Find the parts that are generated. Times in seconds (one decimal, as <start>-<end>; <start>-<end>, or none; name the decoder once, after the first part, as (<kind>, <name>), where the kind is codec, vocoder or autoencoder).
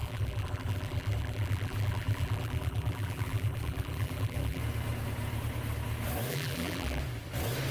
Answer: 0.0-4.6 (vocoder, BigVGAN v2); 6.3-7.0